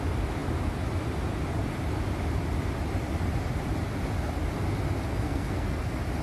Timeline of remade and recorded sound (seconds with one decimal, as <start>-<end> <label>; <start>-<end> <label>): 0.0-5.1 recorded; 5.1-5.8 remade; 5.8-6.2 recorded